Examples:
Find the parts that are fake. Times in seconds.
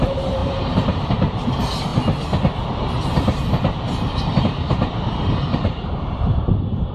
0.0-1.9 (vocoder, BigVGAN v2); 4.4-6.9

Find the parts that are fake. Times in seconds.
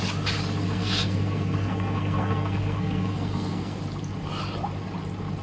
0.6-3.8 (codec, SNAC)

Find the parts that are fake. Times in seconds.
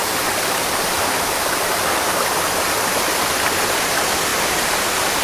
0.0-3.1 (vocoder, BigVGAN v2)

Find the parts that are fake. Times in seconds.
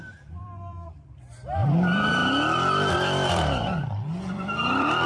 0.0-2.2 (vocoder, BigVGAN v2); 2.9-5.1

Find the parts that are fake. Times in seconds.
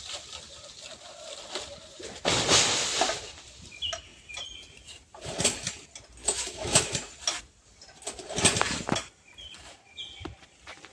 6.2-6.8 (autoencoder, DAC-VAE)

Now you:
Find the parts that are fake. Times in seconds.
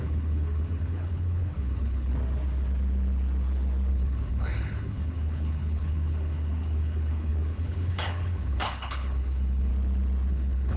0.0-2.1 (codec, HILCodec); 3.9-9.7; 10.3-10.8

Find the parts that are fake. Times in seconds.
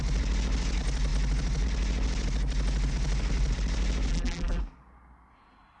4.1-4.6 (vocoder, BigVGAN v2)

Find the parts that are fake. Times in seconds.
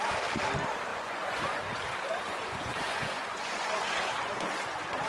0.9-1.6 (vocoder, Vocos); 2.3-5.1